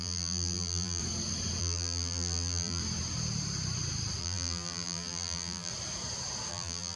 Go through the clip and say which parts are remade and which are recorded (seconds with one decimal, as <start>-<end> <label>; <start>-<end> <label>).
0.0-1.0 remade; 1.0-1.6 recorded; 1.6-2.8 remade; 2.8-4.2 recorded; 4.2-5.7 remade; 5.7-6.5 recorded; 6.5-7.0 remade